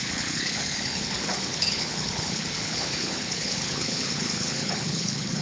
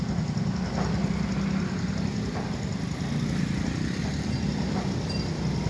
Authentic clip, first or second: second